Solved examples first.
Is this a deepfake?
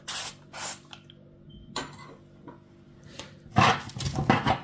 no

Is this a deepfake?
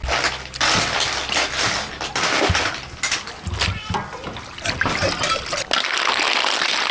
no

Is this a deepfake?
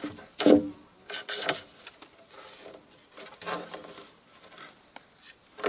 no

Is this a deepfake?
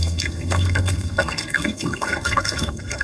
yes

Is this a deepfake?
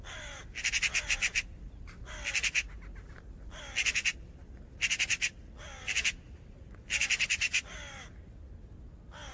no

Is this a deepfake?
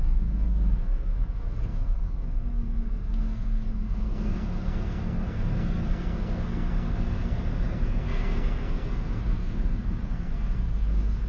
yes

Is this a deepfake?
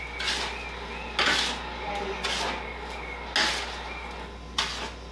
no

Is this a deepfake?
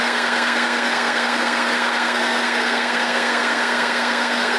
yes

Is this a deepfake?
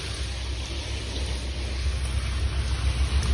no